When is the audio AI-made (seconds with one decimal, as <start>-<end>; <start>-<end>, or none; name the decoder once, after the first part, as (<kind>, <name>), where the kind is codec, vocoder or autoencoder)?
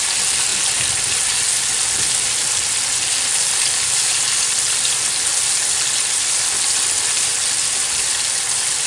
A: none